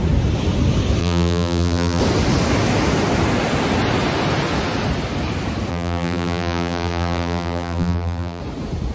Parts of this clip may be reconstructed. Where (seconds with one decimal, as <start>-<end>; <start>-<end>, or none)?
1.0-2.0; 5.7-8.4